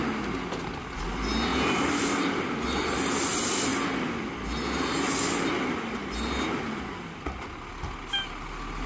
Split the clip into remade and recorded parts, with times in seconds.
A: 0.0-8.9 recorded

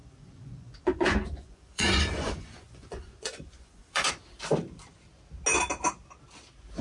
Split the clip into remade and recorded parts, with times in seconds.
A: 0.0-4.1 remade; 4.1-6.8 recorded

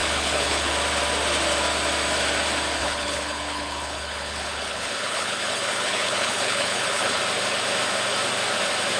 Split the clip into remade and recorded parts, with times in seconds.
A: 0.0-0.7 remade; 0.7-2.8 recorded; 2.8-7.2 remade; 7.2-9.0 recorded

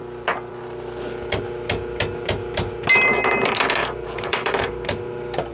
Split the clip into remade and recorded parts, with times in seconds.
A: 0.0-3.8 recorded; 3.8-4.7 remade; 4.7-5.5 recorded

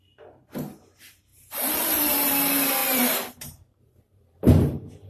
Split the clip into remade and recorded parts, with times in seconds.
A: 0.0-1.3 recorded; 1.3-2.3 remade; 2.3-2.8 recorded; 2.8-5.1 remade

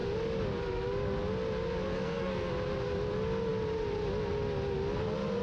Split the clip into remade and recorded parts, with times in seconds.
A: 0.0-1.9 recorded; 1.9-2.5 remade; 2.5-5.4 recorded